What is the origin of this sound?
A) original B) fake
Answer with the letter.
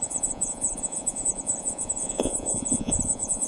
B